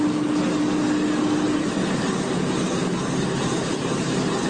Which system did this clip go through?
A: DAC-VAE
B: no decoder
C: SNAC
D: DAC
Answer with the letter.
B